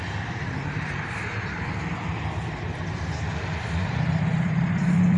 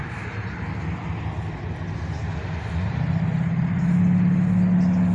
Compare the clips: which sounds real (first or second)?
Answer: second